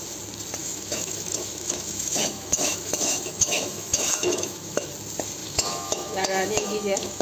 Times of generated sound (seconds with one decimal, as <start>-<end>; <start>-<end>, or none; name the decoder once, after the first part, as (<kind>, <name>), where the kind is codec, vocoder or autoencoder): 0.6-4.9 (autoencoder, DAC-VAE); 5.4-7.2